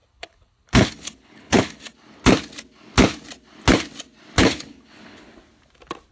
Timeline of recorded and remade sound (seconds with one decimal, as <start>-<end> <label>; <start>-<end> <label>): 0.0-1.9 remade; 1.9-4.4 recorded; 4.4-5.3 remade; 5.3-6.1 recorded

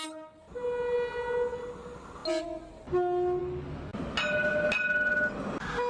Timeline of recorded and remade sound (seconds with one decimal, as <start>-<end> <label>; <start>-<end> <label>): 0.0-5.9 recorded